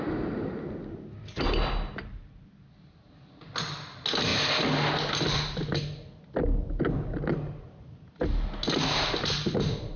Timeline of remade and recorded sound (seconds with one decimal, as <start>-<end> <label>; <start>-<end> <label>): 0.0-10.0 recorded